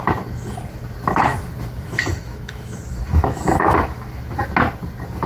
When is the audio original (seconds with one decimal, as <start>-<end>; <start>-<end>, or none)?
0.0-1.3; 4.5-5.3